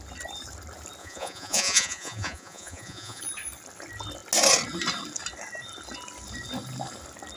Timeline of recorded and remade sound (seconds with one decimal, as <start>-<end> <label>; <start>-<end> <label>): 0.0-1.0 recorded; 1.0-3.2 remade; 3.2-7.4 recorded